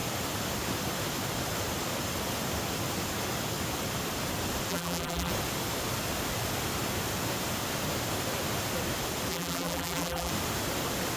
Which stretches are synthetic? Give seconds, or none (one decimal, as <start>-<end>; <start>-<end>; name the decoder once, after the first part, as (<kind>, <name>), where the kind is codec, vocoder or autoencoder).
4.7-5.3 (vocoder, BigVGAN v2); 9.3-10.3